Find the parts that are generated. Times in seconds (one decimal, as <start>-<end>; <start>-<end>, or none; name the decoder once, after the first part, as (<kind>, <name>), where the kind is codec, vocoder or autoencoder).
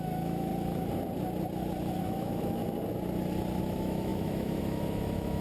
0.0-0.5 (autoencoder, DAC-VAE); 2.0-2.6; 3.6-5.4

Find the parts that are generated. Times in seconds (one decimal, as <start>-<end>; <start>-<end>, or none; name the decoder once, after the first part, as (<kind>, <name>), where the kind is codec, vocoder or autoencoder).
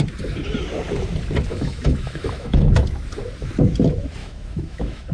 1.5-2.8 (autoencoder, DAC-VAE); 4.2-5.1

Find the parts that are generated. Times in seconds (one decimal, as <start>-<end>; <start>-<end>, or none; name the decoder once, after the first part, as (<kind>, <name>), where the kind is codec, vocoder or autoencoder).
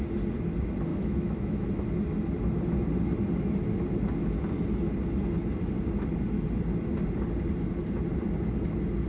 0.9-1.7 (autoencoder, DAC-VAE)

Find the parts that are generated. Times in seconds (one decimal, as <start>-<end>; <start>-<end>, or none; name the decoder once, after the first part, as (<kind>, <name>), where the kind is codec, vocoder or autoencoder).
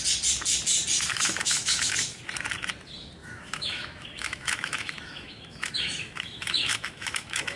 1.1-2.2 (autoencoder, DAC-VAE); 3.2-7.6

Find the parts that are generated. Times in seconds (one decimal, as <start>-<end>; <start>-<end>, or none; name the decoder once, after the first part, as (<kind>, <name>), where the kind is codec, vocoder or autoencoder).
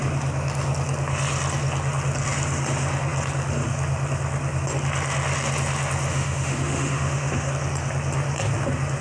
6.1-7.5 (autoencoder, DAC-VAE)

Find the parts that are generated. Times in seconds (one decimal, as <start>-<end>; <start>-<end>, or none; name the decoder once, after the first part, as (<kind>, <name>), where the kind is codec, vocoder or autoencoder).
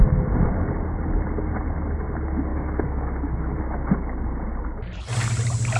2.5-3.6 (autoencoder, DAC-VAE)